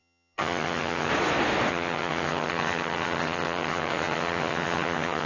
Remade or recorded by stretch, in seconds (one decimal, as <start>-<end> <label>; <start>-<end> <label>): 0.0-1.1 remade; 1.1-1.7 recorded; 1.7-5.3 remade